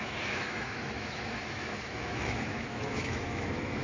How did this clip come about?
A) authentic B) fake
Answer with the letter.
B